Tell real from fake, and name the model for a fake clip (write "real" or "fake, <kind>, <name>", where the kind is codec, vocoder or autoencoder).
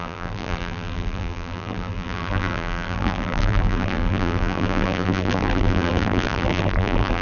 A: fake, vocoder, BigVGAN v2